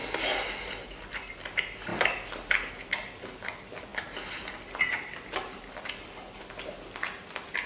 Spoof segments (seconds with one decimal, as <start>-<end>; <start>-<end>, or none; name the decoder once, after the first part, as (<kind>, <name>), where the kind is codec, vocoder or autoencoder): none